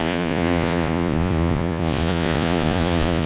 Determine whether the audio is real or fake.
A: fake